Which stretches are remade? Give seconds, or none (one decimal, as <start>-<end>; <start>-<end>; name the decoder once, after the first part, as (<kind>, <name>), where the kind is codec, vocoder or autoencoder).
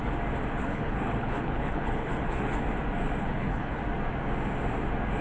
0.6-2.5 (codec, HILCodec); 3.2-3.8